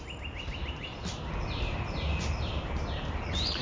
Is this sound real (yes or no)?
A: yes